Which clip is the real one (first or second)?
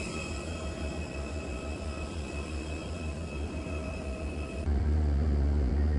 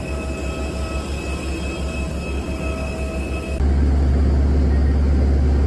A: second